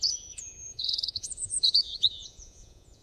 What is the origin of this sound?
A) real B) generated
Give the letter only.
B